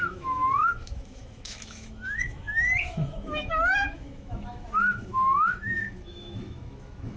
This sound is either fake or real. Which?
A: fake